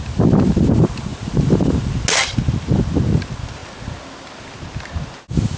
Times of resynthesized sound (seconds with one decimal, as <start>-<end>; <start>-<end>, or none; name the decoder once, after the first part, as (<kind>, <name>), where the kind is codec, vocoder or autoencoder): none